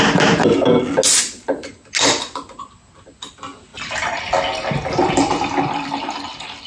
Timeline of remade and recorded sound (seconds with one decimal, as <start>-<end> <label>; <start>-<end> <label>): 0.0-6.7 recorded